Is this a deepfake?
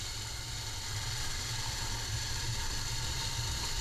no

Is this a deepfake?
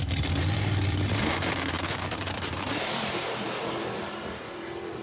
yes